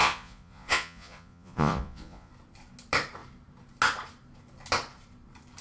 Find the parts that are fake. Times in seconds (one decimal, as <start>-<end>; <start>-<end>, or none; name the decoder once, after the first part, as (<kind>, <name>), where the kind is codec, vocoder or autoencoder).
0.0-2.3 (vocoder, Vocos)